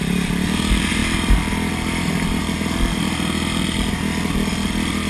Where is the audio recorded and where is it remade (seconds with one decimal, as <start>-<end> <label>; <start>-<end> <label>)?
0.0-5.1 recorded